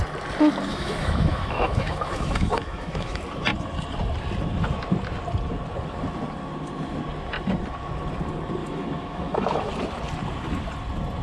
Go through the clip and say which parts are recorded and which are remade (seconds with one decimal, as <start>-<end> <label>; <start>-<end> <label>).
0.0-0.7 recorded; 0.7-3.2 remade; 3.2-8.6 recorded; 8.6-9.7 remade; 9.7-11.2 recorded